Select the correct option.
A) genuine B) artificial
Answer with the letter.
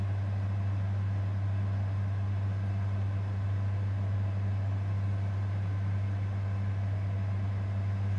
A